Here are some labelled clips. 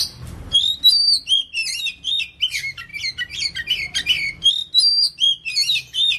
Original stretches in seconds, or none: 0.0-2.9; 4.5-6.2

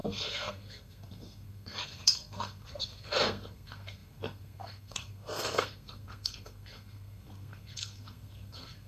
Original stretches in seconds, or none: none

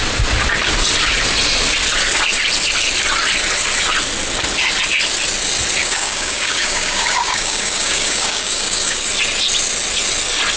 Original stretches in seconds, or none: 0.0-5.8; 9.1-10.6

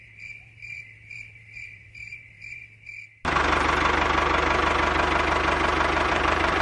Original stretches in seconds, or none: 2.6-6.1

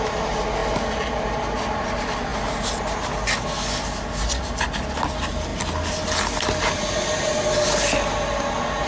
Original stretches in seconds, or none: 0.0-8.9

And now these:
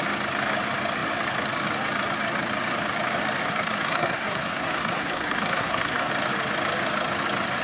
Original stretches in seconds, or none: 0.0-3.4; 6.1-7.6